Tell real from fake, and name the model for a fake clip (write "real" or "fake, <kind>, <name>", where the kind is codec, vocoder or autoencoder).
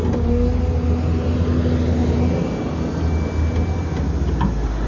real